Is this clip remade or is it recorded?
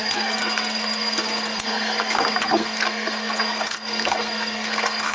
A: remade